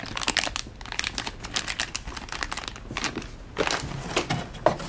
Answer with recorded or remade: recorded